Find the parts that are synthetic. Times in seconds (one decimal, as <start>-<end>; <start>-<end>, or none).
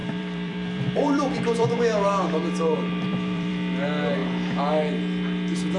0.0-3.5